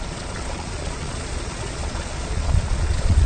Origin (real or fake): fake